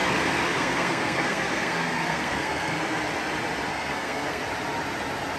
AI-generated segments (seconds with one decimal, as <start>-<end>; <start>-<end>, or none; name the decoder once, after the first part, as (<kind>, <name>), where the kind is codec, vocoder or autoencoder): 0.0-3.0 (codec, SNAC); 3.7-4.4